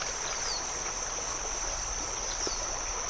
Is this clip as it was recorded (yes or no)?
yes